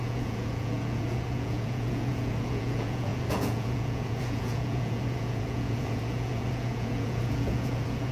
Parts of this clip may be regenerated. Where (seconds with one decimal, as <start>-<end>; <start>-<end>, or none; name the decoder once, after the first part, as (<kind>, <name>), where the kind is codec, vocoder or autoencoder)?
0.0-8.1 (vocoder, Vocos)